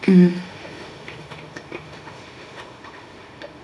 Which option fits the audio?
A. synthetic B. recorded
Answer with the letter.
A